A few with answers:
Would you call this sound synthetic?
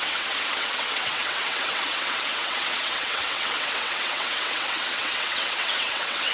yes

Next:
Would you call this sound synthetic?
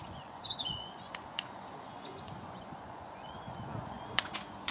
yes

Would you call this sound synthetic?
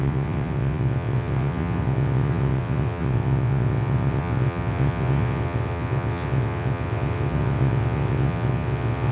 yes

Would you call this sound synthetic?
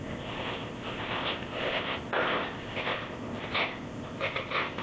yes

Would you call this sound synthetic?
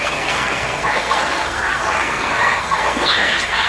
yes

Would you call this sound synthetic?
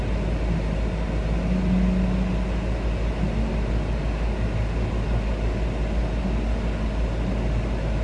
no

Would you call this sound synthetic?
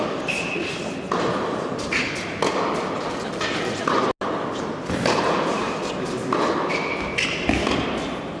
no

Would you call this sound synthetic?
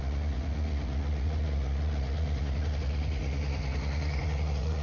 yes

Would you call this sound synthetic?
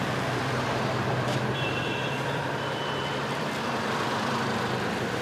yes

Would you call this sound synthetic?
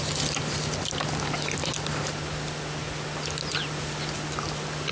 no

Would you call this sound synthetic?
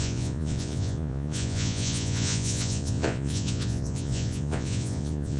yes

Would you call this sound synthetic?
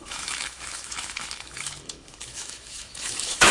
yes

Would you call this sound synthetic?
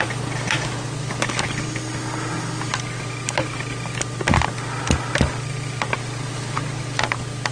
no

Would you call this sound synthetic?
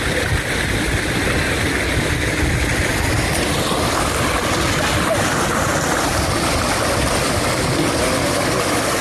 no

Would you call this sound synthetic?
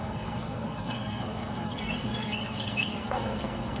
yes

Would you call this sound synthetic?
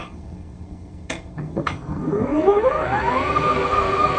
yes